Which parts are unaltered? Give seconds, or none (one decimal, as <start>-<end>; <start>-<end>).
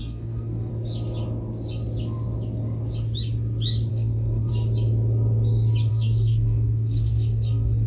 0.7-3.9; 4.5-5.9